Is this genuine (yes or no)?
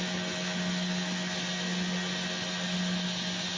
yes